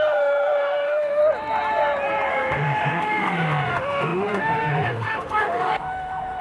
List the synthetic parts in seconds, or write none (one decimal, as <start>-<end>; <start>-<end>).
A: 0.0-1.2; 2.3-6.4